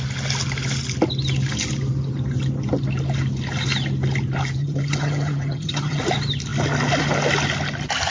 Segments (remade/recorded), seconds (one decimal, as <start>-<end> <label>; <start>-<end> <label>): 0.0-4.6 recorded; 4.6-6.0 remade; 6.0-8.1 recorded